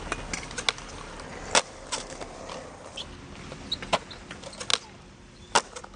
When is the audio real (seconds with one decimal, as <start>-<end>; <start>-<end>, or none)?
0.0-6.0